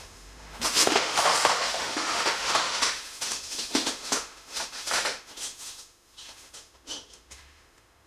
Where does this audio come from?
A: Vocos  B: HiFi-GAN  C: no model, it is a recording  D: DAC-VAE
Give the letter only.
D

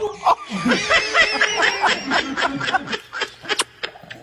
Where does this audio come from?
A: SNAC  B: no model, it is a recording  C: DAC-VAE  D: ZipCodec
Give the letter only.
B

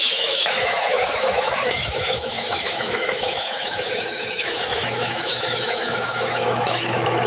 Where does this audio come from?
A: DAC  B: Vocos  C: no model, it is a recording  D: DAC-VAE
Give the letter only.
D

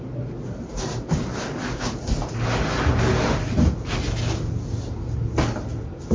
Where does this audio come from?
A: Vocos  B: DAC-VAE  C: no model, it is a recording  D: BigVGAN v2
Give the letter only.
C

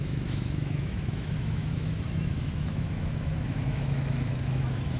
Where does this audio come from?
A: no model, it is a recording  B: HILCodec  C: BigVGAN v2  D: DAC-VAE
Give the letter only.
D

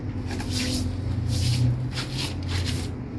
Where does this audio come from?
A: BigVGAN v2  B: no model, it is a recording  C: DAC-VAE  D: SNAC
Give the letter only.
B